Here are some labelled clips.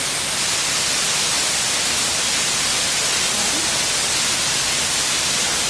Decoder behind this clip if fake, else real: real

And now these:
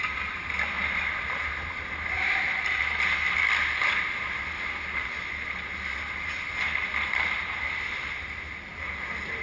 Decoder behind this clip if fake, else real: real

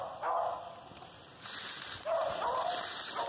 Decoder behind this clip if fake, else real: real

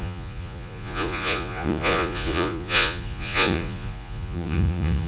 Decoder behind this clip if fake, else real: fake, vocoder, Vocos